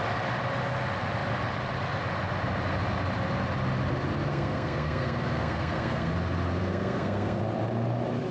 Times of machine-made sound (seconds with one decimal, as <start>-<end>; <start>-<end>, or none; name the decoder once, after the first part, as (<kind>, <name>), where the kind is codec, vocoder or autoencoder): 4.3-6.1 (codec, SNAC); 6.6-7.4